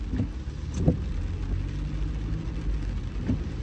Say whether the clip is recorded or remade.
recorded